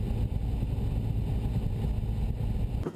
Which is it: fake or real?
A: real